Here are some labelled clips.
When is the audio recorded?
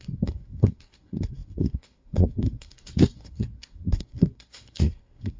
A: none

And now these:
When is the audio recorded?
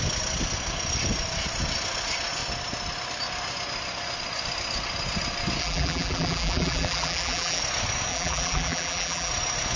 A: 0.0-5.6; 7.6-8.1; 9.3-9.8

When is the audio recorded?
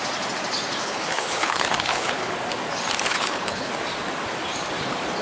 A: 0.0-0.8; 2.3-3.1; 3.7-5.2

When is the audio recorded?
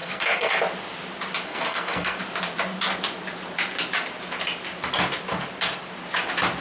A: 0.6-1.5; 2.2-6.6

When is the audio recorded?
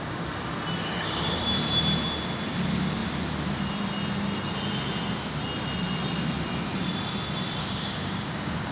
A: 0.0-0.8; 1.4-7.6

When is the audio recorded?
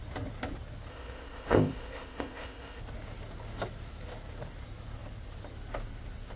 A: 0.0-0.9; 2.8-6.4